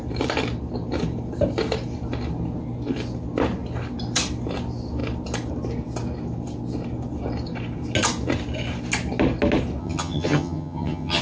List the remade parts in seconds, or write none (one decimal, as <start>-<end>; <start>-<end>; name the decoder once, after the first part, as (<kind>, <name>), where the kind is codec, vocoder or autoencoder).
9.8-11.2 (vocoder, HiFi-GAN)